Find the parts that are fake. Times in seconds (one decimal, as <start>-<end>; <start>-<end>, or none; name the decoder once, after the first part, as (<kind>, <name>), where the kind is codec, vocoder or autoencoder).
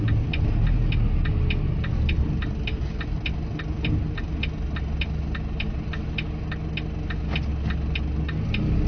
none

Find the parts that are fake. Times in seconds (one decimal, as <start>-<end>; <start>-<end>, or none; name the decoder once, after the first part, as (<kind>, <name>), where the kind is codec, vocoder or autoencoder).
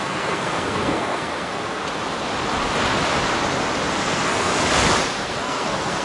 0.0-1.8 (codec, SNAC); 3.9-4.5; 5.1-6.0